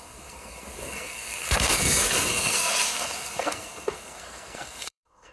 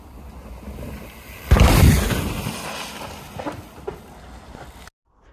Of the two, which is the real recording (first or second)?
second